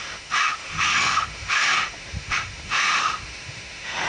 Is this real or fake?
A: fake